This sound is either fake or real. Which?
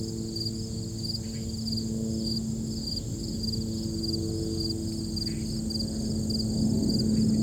real